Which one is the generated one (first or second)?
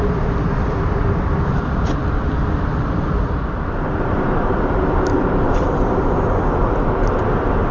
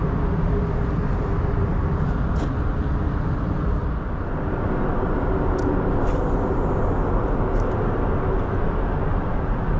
first